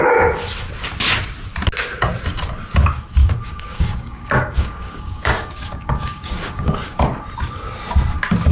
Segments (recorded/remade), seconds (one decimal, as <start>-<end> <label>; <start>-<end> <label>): 0.0-3.2 recorded; 3.2-7.0 remade; 7.0-8.5 recorded